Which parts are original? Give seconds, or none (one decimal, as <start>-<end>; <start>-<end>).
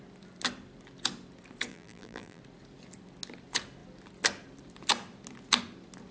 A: 0.0-1.7; 2.4-6.1